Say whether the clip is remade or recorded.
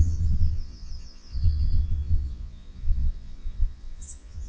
remade